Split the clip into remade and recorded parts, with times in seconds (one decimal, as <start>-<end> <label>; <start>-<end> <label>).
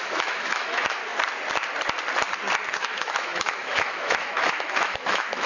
0.0-1.0 remade; 1.0-2.7 recorded; 2.7-5.5 remade